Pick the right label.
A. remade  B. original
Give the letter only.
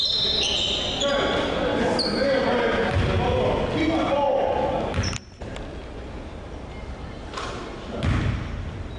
B